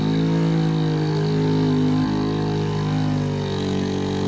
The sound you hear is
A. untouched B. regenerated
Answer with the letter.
A